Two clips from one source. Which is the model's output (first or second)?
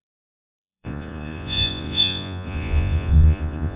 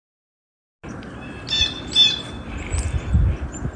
first